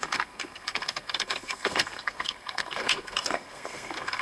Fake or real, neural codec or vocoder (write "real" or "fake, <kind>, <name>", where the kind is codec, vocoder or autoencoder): fake, codec, SNAC